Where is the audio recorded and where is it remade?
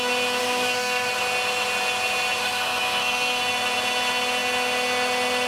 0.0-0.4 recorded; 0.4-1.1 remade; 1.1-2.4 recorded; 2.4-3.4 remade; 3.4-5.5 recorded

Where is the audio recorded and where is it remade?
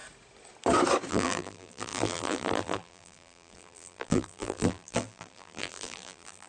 0.0-1.1 recorded; 1.1-6.5 remade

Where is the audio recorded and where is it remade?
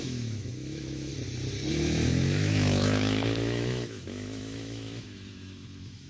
0.0-1.1 remade; 1.1-1.7 recorded; 1.7-6.1 remade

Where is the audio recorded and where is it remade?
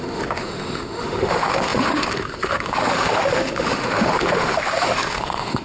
0.0-5.6 remade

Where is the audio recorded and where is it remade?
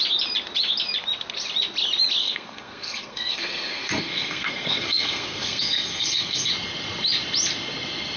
0.0-2.2 recorded; 2.2-6.5 remade; 6.5-8.2 recorded